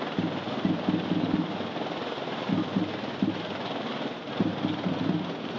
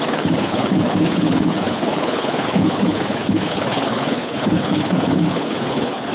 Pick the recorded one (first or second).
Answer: first